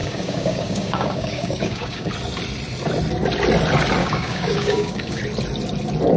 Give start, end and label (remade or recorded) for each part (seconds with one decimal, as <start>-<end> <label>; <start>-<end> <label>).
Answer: 0.0-2.1 remade; 2.1-4.0 recorded; 4.0-5.2 remade; 5.2-6.2 recorded